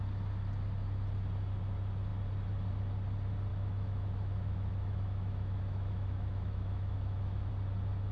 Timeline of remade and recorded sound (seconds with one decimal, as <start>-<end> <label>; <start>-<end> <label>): 0.0-3.5 recorded; 3.5-7.5 remade; 7.5-8.1 recorded